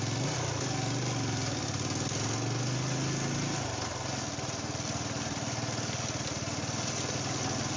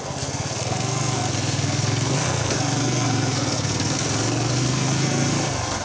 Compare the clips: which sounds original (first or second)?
first